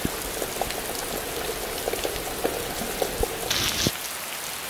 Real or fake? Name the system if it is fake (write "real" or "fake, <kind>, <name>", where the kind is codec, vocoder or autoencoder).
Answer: real